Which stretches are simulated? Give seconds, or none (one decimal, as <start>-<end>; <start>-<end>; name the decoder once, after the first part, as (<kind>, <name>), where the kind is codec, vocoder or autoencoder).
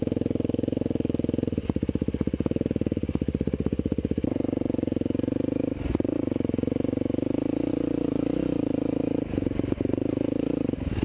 none